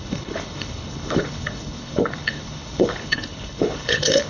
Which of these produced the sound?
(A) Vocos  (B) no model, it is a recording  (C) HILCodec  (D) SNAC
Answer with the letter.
C